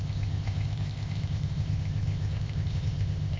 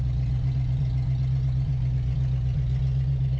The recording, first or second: second